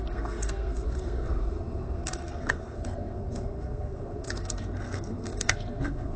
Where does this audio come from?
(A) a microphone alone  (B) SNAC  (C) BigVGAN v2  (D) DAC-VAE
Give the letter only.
B